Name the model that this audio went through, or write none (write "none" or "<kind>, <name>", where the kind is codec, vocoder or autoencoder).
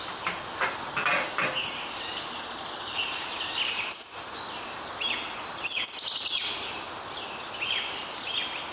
none